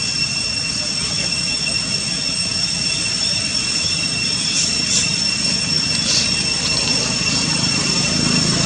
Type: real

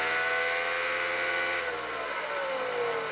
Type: real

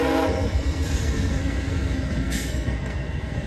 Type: fake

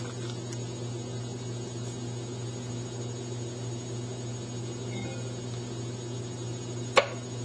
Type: real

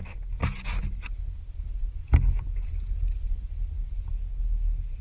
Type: real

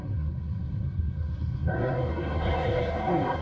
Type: fake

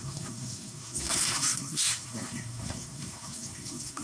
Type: fake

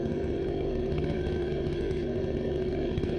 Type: fake